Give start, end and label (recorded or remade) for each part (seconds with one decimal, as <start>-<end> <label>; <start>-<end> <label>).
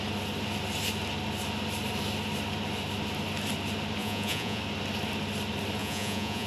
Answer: 0.0-4.0 recorded; 4.0-4.6 remade; 4.6-5.8 recorded; 5.8-6.5 remade